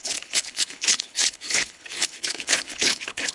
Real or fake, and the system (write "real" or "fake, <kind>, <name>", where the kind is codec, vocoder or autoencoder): fake, codec, HILCodec